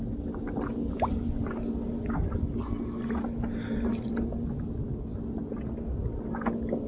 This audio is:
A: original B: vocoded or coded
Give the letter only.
A